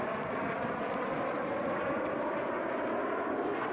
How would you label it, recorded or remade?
recorded